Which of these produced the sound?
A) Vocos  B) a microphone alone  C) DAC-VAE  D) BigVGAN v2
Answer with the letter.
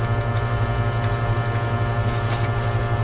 B